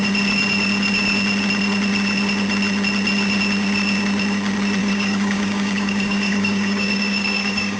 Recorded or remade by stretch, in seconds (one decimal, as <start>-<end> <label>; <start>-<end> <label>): 0.0-4.8 recorded; 4.8-7.8 remade